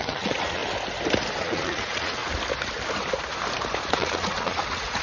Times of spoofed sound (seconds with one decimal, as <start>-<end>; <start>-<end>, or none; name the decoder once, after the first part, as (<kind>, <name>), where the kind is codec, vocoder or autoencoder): 0.0-0.6 (vocoder, Vocos); 1.4-2.2; 3.8-5.0